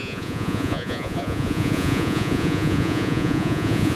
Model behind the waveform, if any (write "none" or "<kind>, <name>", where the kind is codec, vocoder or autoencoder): vocoder, Vocos